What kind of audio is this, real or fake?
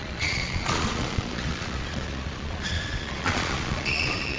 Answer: fake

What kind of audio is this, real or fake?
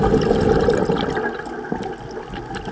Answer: real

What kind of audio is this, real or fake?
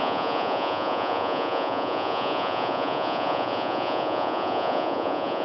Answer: fake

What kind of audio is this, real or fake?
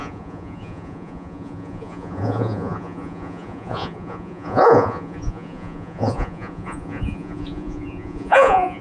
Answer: fake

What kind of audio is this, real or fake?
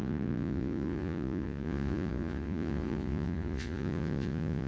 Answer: fake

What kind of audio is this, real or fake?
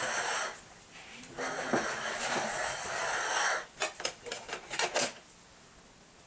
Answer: real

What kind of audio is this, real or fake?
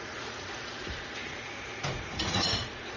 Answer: fake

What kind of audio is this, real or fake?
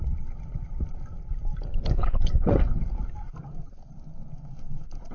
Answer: real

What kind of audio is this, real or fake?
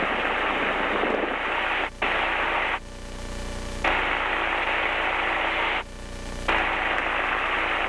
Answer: real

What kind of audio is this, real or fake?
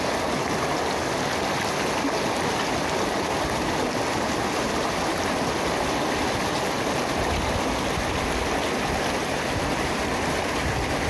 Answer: real